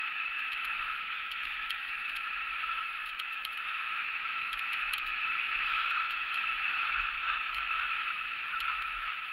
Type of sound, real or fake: fake